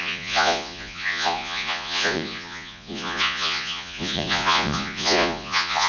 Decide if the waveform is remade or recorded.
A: remade